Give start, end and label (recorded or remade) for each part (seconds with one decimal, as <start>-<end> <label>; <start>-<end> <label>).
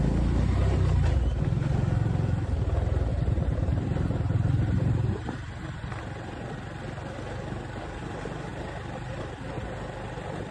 0.0-3.1 recorded; 3.1-6.0 remade; 6.0-8.5 recorded; 8.5-9.2 remade; 9.2-10.5 recorded